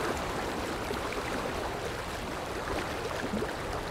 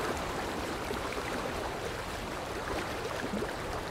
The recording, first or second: first